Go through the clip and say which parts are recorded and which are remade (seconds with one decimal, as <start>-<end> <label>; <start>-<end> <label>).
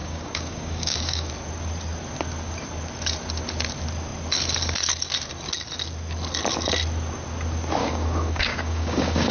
0.0-1.3 remade; 1.3-7.8 recorded; 7.8-9.3 remade